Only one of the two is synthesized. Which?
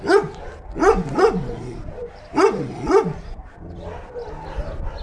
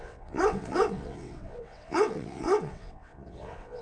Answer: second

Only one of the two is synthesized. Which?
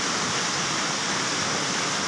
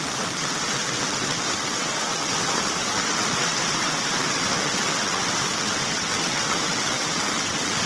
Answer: second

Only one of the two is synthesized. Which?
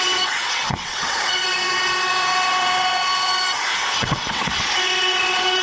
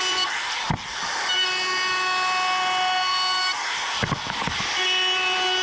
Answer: first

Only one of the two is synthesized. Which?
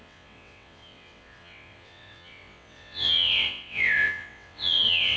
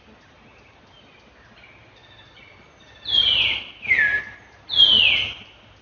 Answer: first